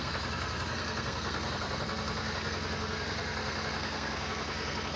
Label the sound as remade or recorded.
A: remade